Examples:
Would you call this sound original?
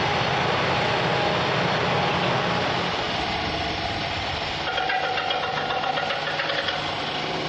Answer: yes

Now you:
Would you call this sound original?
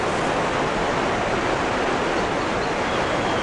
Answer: yes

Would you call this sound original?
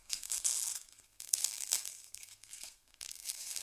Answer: no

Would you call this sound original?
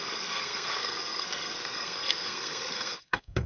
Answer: no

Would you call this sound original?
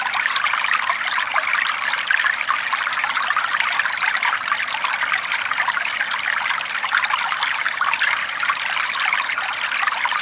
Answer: yes